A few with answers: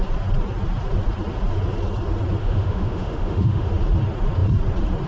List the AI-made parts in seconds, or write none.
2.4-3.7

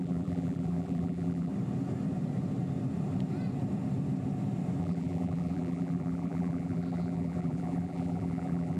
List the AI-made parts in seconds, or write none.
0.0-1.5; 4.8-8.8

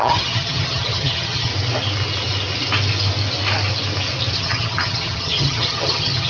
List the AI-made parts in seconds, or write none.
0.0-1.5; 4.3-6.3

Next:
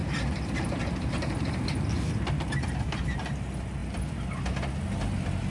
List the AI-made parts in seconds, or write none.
0.0-3.3